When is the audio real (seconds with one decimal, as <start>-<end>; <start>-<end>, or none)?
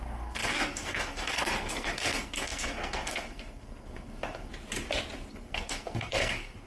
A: 4.5-5.3